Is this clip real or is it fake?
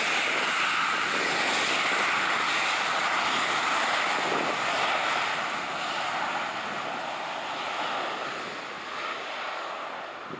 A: real